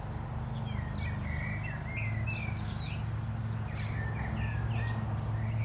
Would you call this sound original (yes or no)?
yes